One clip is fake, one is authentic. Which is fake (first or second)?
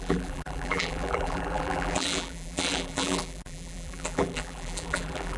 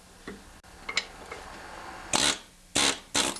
first